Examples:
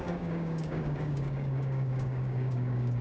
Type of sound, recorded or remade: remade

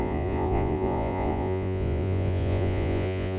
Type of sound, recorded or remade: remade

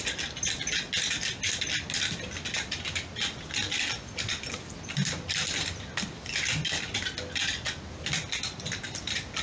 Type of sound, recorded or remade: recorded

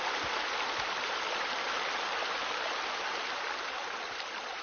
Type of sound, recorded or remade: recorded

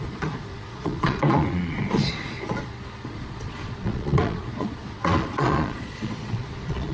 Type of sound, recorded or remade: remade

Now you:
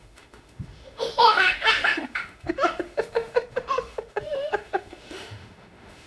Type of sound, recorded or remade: remade